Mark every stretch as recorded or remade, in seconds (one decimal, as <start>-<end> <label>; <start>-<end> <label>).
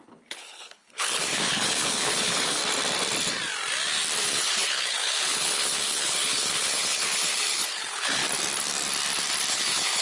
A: 0.0-2.6 remade; 2.6-4.2 recorded; 4.2-8.2 remade; 8.2-9.5 recorded; 9.5-10.0 remade